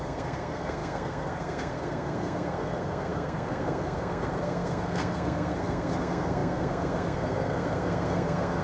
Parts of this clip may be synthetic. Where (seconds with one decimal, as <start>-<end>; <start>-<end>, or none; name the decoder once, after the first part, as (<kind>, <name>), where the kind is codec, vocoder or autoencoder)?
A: 0.0-8.6 (codec, SNAC)